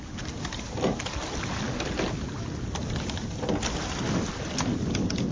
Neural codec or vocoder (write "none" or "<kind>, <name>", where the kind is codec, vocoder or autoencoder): none